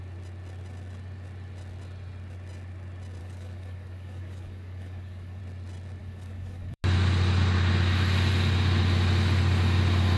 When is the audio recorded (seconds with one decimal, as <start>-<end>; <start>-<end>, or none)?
0.0-3.2; 5.4-6.0; 6.8-10.2